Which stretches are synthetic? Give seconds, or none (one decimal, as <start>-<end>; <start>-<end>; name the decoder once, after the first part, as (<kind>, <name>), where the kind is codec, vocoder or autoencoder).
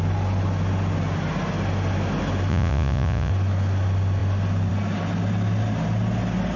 2.5-3.3 (vocoder, Vocos)